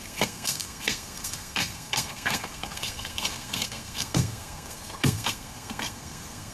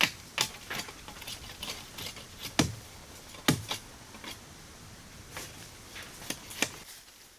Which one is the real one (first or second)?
second